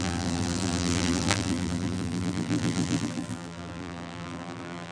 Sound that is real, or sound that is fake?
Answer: fake